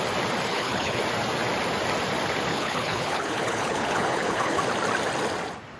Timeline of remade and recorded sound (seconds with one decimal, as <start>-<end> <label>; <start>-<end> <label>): 0.0-0.5 recorded; 0.5-1.0 remade; 1.0-2.5 recorded; 2.5-4.6 remade; 4.6-5.8 recorded